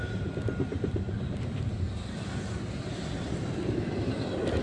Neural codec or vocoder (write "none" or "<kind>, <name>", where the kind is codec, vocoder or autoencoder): none